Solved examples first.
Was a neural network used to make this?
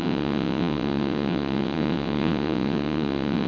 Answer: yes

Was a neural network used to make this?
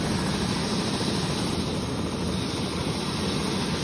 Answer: no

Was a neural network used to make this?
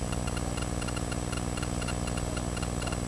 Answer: no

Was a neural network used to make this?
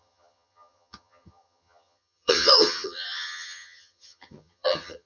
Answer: yes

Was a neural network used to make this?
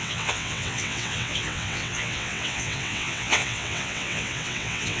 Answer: yes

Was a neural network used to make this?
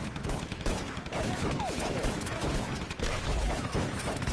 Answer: yes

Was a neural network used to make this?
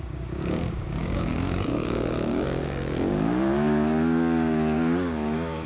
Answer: yes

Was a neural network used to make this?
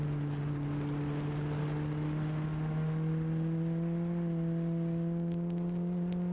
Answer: no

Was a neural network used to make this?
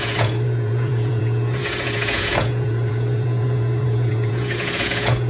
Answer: yes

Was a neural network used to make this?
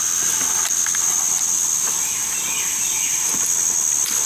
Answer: no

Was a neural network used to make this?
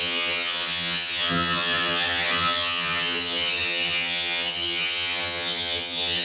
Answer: yes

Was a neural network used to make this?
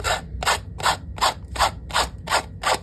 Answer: no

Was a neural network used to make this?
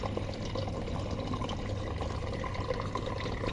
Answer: no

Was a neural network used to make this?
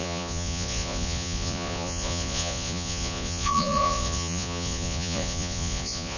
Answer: yes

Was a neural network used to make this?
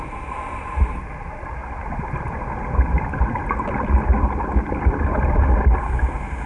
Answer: no